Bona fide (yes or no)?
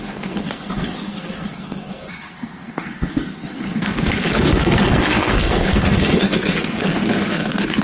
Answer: no